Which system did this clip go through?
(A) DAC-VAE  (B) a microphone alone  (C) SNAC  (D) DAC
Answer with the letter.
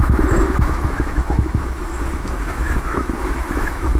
A